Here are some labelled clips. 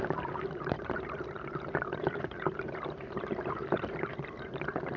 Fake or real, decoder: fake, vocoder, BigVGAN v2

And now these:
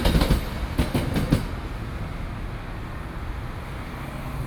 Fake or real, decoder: real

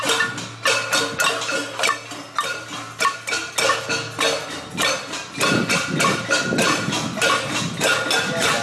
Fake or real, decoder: real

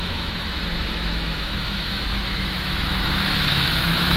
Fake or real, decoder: fake, autoencoder, DAC-VAE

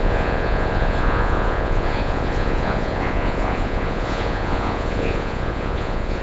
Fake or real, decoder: fake, vocoder, Vocos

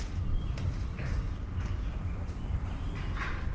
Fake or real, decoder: real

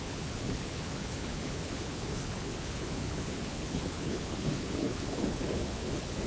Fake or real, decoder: fake, codec, HILCodec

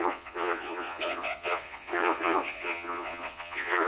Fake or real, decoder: fake, vocoder, Vocos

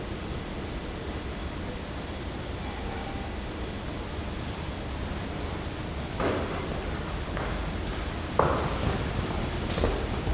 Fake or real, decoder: real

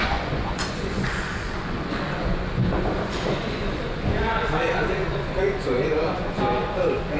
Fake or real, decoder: fake, vocoder, Vocos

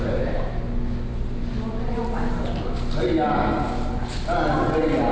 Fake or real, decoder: real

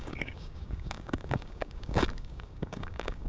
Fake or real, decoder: fake, codec, DAC